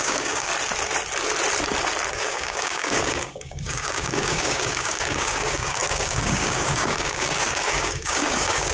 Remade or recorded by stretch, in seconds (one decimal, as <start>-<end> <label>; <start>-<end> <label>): 0.0-0.5 remade; 0.5-2.1 recorded; 2.1-8.7 remade